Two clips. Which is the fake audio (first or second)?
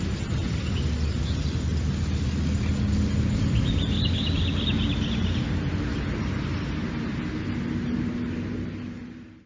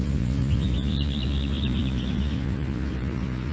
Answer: second